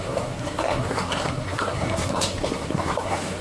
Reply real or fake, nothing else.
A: fake